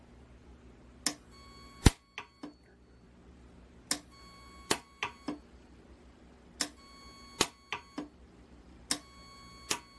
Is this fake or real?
real